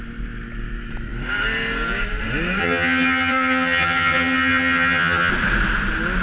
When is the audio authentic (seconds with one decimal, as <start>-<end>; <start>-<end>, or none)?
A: 0.0-2.6; 5.3-6.2